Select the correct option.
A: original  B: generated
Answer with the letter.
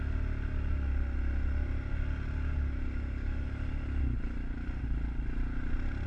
A